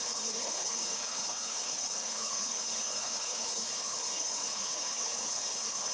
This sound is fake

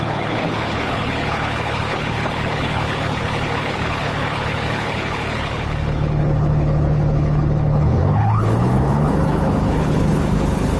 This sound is fake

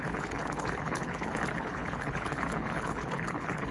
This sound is fake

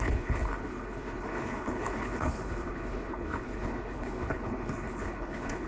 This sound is fake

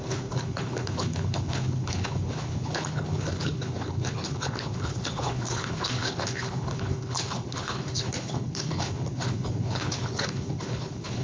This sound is fake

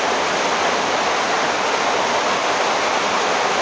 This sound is real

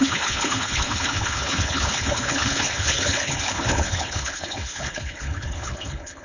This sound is fake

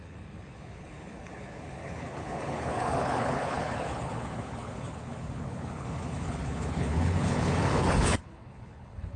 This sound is fake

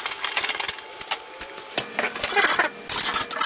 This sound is real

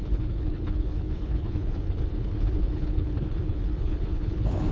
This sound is fake